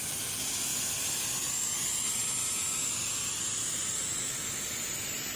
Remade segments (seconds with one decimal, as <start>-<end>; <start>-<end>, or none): none